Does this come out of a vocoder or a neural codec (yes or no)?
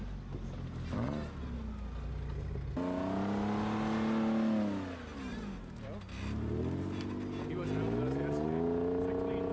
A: no